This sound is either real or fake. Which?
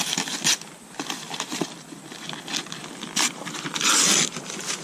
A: real